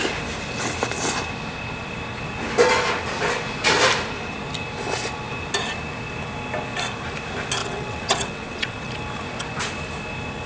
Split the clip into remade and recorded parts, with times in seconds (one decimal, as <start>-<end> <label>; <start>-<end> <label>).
0.0-7.6 recorded; 7.6-8.9 remade; 8.9-10.5 recorded

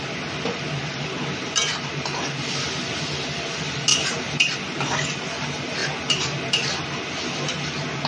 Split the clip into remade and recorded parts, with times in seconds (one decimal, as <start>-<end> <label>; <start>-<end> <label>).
0.0-3.9 recorded; 3.9-4.5 remade; 4.5-5.8 recorded; 5.8-7.1 remade; 7.1-8.1 recorded